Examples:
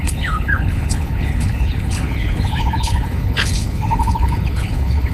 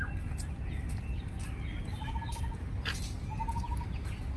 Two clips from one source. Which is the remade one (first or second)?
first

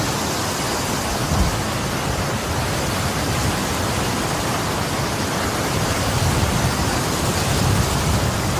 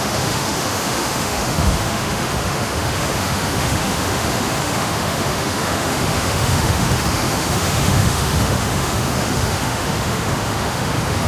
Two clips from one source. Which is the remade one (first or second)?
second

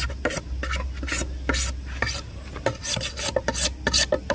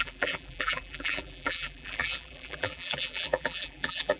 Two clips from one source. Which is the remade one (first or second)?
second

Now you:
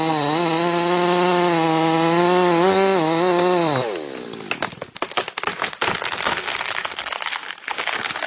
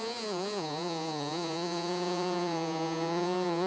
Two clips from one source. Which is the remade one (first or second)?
second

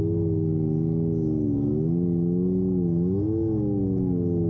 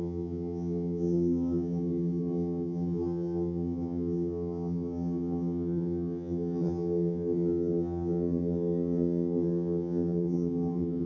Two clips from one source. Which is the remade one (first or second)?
second